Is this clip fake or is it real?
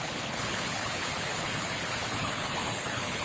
fake